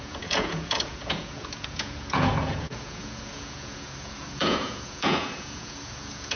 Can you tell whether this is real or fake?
fake